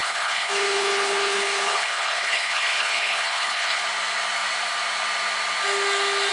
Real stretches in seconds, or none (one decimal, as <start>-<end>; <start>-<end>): 3.8-6.3